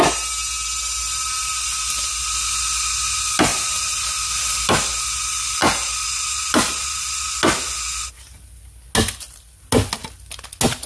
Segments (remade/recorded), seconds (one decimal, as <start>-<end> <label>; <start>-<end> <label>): 0.0-10.9 recorded